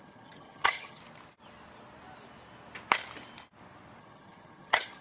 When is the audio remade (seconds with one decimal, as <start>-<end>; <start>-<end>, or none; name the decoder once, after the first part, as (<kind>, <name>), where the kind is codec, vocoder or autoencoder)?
0.0-1.0 (vocoder, HiFi-GAN); 4.0-5.0

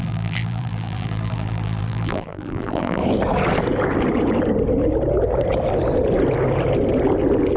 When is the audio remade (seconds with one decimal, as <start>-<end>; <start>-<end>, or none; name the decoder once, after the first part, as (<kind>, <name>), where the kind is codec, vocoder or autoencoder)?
0.0-3.0 (vocoder, BigVGAN v2)